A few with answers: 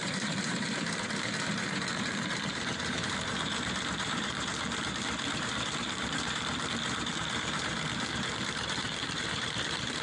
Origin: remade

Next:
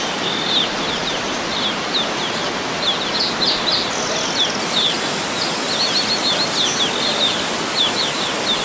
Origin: recorded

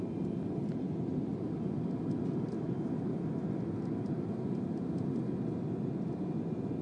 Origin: recorded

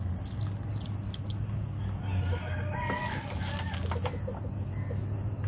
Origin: recorded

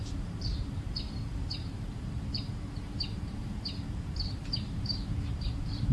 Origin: remade